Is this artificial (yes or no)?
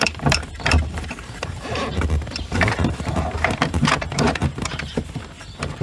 yes